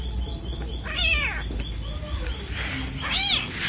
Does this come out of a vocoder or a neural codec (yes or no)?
no